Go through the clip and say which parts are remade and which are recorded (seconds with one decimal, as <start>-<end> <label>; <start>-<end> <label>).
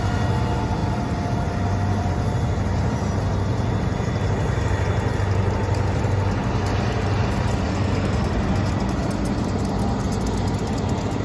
0.0-7.7 recorded; 7.7-8.3 remade; 8.3-11.2 recorded